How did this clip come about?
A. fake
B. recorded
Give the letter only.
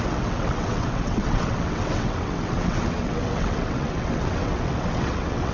A